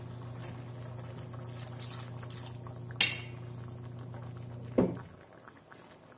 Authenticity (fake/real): real